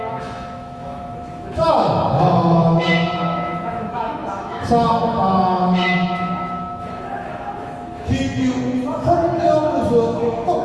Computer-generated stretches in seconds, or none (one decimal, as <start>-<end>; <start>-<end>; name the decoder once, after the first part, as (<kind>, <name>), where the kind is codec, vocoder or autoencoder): 0.0-8.2 (autoencoder, DAC-VAE); 8.9-10.6